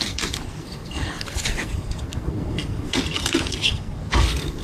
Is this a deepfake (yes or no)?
yes